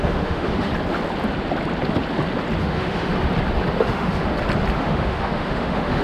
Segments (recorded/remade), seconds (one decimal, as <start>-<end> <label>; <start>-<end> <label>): 0.0-0.7 remade; 0.7-2.6 recorded; 2.6-3.1 remade; 3.1-3.8 recorded; 3.8-4.2 remade; 4.2-4.8 recorded; 4.8-6.0 remade